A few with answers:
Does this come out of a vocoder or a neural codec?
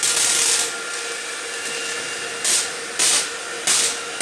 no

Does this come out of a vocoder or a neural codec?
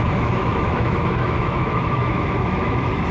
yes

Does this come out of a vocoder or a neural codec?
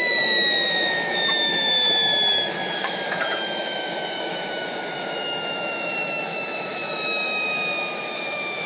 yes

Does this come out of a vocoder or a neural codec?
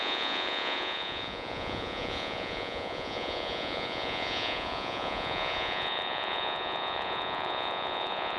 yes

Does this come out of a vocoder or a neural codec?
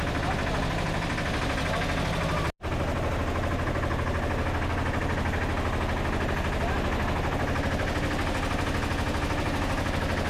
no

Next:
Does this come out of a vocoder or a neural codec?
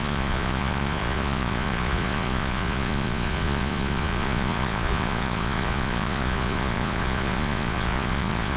yes